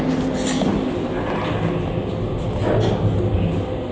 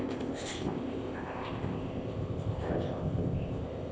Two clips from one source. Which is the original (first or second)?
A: first